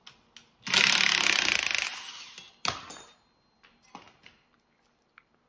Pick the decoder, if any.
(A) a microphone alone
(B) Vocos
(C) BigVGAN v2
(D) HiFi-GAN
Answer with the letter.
A